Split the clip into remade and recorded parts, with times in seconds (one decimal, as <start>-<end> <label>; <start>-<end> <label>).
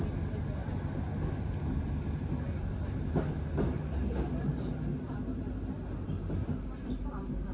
0.0-7.5 recorded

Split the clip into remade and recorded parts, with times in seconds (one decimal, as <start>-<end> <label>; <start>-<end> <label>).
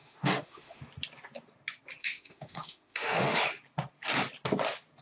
0.0-0.8 remade; 0.8-2.0 recorded; 2.0-3.4 remade; 3.4-5.0 recorded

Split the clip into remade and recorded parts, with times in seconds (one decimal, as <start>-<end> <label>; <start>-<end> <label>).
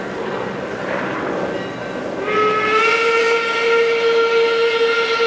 0.0-5.3 recorded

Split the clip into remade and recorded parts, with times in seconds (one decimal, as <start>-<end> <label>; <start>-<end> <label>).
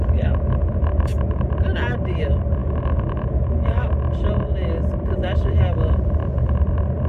0.0-1.5 remade; 1.5-2.6 recorded; 2.6-4.1 remade; 4.1-7.1 recorded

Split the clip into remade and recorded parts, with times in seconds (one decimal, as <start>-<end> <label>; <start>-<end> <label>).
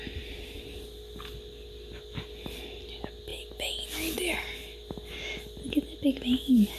0.0-6.8 recorded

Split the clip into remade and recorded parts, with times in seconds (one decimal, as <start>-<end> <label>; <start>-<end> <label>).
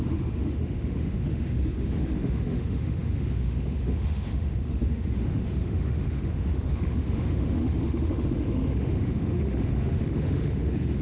0.0-11.0 remade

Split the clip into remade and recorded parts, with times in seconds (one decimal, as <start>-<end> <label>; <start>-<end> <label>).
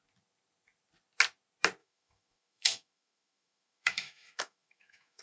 0.0-1.8 recorded; 1.8-5.2 remade